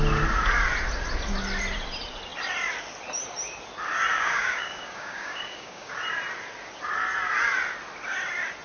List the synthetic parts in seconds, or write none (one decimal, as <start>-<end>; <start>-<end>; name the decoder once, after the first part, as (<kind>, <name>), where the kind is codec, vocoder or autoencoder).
4.1-5.9 (codec, DAC)